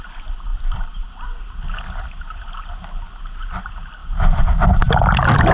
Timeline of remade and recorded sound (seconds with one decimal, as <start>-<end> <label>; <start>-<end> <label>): 0.0-5.5 recorded